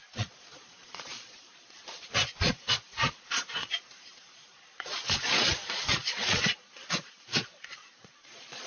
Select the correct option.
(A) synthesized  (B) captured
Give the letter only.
A